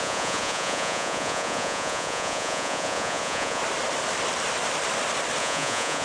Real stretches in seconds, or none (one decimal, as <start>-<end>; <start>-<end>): 3.6-5.4